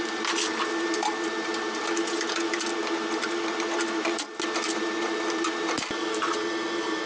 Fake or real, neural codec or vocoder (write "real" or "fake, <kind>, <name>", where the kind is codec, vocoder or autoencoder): real